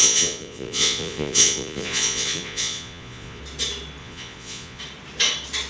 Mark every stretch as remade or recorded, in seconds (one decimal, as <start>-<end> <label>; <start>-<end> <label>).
0.0-3.4 remade; 3.4-4.0 recorded; 4.0-4.8 remade; 4.8-5.7 recorded